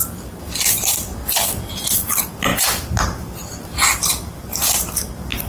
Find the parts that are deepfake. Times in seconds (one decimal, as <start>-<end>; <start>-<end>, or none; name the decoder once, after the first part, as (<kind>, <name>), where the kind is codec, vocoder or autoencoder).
0.0-1.1 (vocoder, BigVGAN v2); 1.7-5.5